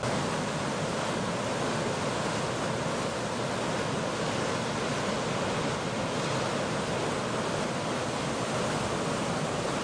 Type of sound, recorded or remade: recorded